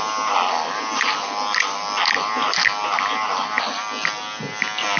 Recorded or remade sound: recorded